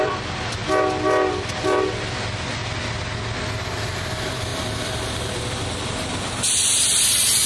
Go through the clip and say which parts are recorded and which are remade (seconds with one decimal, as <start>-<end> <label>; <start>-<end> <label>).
0.0-0.6 remade; 0.6-1.3 recorded; 1.3-2.6 remade; 2.6-3.8 recorded; 3.8-7.5 remade